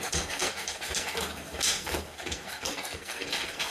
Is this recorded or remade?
remade